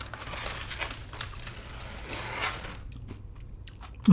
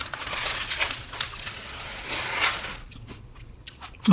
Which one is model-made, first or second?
second